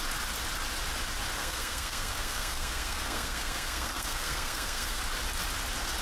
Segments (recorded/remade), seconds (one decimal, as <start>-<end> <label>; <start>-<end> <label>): 0.0-1.4 recorded; 1.4-5.0 remade; 5.0-6.0 recorded